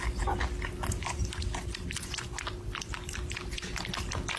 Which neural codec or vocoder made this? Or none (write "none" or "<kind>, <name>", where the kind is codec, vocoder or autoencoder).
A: none